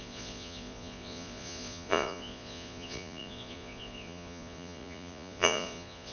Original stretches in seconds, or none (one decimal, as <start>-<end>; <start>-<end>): none